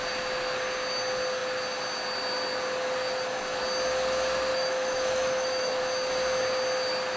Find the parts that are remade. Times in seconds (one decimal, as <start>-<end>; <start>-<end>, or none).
4.5-5.8